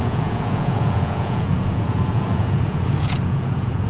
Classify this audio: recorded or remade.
remade